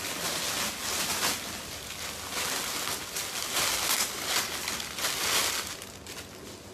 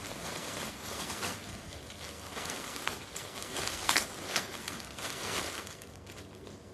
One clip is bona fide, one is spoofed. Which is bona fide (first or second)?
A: first